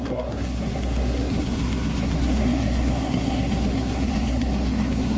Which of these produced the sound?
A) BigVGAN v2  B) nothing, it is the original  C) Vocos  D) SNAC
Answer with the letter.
D